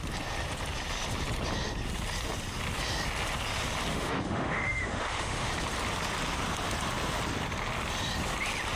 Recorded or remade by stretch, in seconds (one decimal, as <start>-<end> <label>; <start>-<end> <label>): 0.0-3.9 recorded; 3.9-5.5 remade; 5.5-8.8 recorded